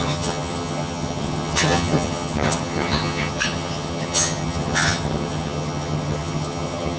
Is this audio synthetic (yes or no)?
yes